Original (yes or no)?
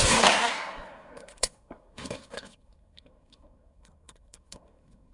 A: no